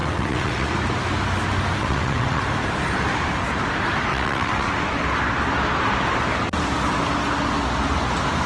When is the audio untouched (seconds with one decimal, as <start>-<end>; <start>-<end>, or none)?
0.7-1.8; 2.4-4.1; 4.7-8.5